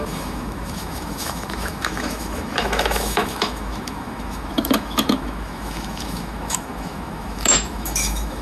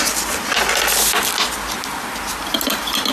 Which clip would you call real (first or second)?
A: second